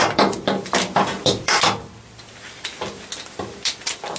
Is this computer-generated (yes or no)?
yes